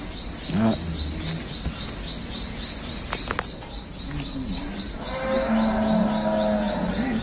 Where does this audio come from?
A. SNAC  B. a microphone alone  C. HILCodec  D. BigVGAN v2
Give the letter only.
B